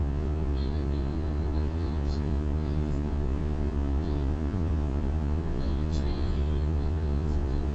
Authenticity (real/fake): fake